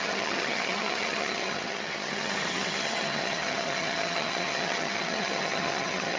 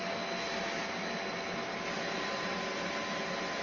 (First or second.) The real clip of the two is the second